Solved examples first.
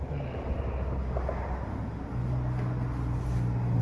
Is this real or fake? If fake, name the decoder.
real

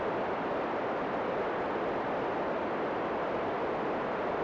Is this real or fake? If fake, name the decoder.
real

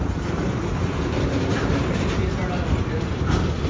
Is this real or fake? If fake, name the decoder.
fake, vocoder, BigVGAN v2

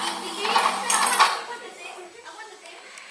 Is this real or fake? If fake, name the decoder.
real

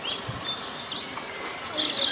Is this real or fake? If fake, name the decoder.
real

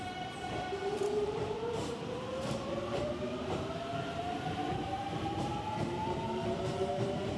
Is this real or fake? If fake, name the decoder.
fake, vocoder, BigVGAN v2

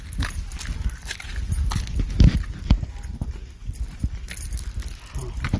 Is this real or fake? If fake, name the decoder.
real